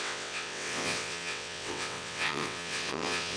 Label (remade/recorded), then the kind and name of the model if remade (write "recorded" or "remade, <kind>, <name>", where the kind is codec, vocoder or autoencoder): remade, vocoder, WaveNeXt